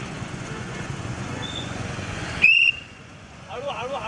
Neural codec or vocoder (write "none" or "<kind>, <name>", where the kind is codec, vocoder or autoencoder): vocoder, Vocos